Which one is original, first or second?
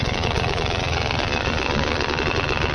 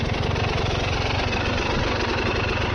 second